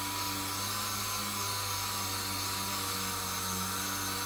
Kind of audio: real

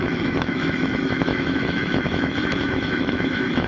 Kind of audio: fake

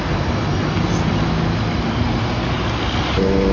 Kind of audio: real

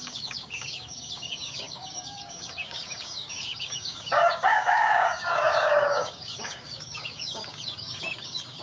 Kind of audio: fake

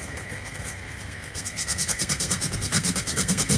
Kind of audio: fake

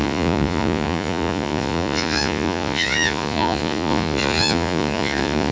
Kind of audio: fake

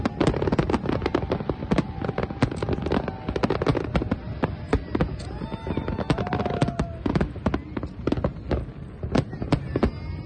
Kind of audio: real